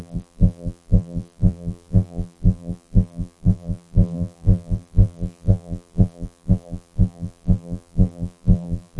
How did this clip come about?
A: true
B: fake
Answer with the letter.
B